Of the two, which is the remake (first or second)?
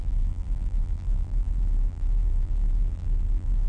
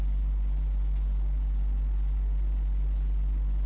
first